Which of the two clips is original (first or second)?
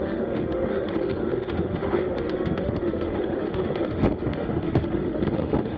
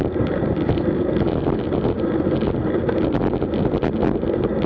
second